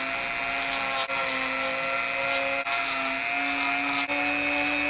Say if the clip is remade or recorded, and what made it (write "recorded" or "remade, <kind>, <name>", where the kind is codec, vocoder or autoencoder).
recorded